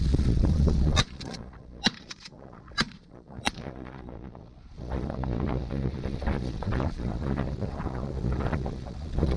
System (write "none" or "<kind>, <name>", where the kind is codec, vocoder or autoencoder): vocoder, Vocos